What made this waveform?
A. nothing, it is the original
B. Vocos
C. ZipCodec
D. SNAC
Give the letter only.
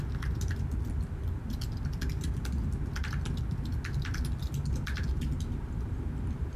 A